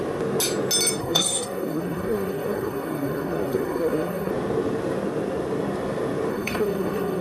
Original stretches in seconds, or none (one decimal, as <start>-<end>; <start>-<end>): 0.0-1.0; 4.3-6.3

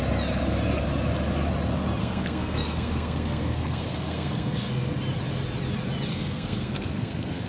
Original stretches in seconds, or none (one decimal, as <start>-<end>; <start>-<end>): 0.0-2.0; 4.9-6.1

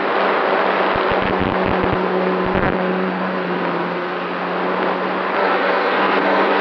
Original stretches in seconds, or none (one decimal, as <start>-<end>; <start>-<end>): 0.0-5.4

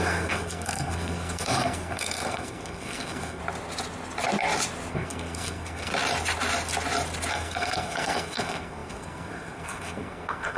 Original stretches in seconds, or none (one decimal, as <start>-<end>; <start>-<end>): 3.4-4.9; 5.9-7.3

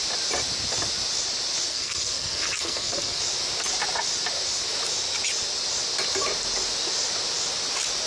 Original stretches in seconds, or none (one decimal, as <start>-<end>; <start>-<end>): 0.0-1.7; 3.2-8.1

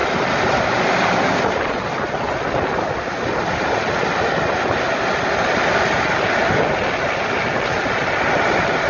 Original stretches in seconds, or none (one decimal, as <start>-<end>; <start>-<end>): 0.0-8.9

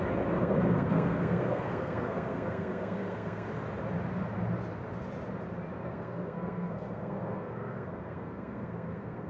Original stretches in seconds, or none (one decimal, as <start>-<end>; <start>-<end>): 0.0-0.4; 3.5-5.8

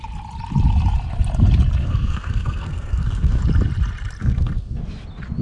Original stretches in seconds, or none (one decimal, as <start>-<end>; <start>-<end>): 0.0-1.8; 3.4-4.2; 4.8-5.4